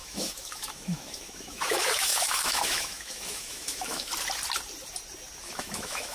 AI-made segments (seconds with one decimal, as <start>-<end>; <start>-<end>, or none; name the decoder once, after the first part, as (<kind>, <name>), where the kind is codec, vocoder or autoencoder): 0.0-4.1 (autoencoder, DAC-VAE); 5.4-6.1